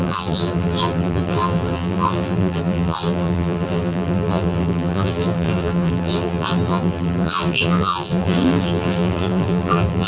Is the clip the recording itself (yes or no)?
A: no